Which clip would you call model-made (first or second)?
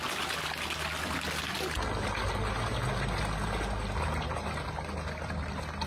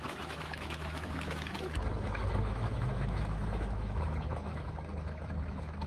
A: second